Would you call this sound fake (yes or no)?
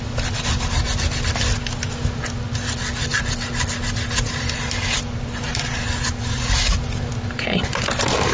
no